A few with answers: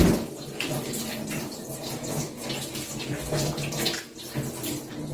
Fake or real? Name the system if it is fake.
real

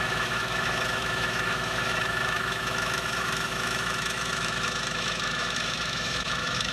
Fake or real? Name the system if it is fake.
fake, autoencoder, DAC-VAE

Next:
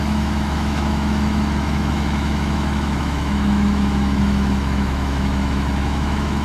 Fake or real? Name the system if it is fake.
fake, autoencoder, DAC-VAE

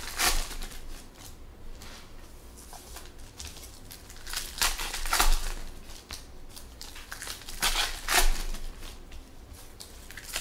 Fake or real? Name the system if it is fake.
real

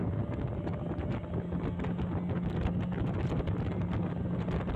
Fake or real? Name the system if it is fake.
real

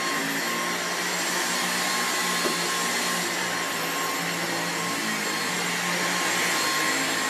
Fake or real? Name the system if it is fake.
real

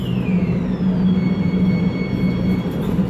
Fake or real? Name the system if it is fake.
real